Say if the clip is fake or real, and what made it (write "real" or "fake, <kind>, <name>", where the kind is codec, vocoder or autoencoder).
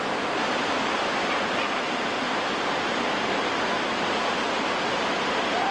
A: fake, vocoder, BigVGAN v2